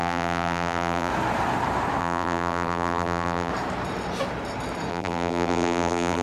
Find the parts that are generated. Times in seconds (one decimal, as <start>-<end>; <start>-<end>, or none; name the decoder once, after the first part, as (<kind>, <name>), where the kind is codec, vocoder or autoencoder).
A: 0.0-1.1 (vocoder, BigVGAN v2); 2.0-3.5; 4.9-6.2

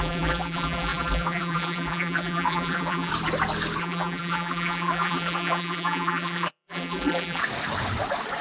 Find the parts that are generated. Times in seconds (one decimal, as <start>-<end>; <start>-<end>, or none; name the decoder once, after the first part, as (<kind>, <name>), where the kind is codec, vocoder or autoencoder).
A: 0.0-3.1 (vocoder, BigVGAN v2); 3.8-7.4

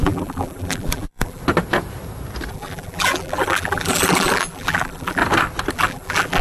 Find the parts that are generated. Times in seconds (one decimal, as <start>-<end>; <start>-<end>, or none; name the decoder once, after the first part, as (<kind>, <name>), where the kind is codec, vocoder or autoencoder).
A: 0.0-1.4 (vocoder, BigVGAN v2); 2.5-5.2; 5.7-6.4

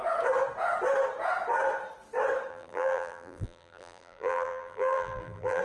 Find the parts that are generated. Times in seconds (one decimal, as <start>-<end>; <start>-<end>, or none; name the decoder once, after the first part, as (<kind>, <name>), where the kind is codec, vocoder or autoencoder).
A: 2.5-5.6 (vocoder, BigVGAN v2)

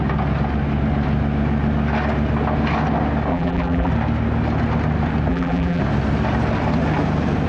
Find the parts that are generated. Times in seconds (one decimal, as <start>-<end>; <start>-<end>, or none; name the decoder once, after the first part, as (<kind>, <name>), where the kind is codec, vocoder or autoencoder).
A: 3.3-3.9 (vocoder, BigVGAN v2); 5.3-5.8

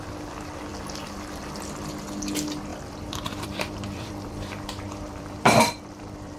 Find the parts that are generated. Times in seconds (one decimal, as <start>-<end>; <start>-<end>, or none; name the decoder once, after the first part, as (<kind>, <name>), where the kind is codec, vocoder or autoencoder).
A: 2.7-6.4 (vocoder, BigVGAN v2)

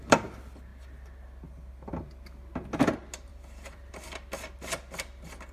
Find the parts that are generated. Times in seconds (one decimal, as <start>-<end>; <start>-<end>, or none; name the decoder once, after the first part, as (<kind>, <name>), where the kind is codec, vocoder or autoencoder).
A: 3.3-3.9 (vocoder, BigVGAN v2)